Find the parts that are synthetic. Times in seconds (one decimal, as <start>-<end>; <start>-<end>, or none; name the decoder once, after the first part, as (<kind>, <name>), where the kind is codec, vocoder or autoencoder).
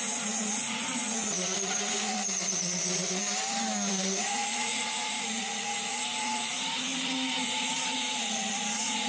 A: 0.0-3.2 (vocoder, Vocos); 3.9-9.1